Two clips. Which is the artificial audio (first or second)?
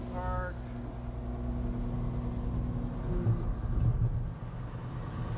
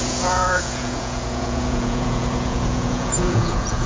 second